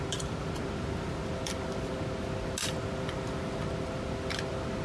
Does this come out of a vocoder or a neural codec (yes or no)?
no